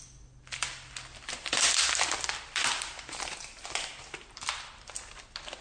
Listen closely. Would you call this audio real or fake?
real